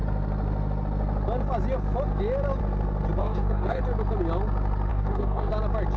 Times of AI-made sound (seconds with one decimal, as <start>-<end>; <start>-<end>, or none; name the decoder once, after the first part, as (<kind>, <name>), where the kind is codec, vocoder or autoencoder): 3.2-3.8 (codec, DAC); 4.9-5.5